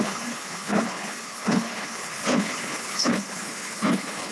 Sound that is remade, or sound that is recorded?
remade